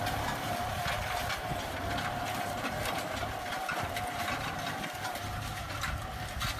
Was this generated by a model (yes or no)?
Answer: no